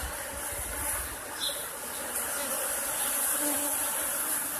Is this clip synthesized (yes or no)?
no